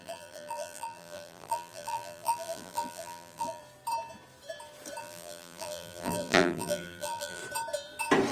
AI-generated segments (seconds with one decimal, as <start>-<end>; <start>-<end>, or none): 0.0-3.6; 5.0-7.4